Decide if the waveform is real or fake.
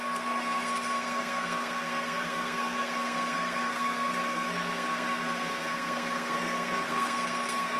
fake